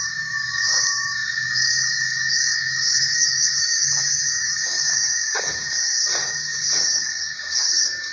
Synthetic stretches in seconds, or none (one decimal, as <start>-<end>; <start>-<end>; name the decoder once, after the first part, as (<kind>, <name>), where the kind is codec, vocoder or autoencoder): 0.0-8.1 (codec, DAC)